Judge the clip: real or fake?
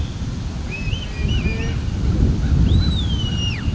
real